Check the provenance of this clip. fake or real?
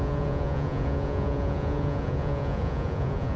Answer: fake